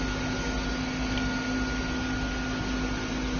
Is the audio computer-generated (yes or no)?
no